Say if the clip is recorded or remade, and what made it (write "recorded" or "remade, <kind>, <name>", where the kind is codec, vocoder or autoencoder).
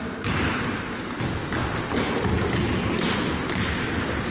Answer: recorded